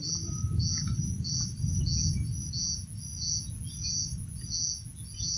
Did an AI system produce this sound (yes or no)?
no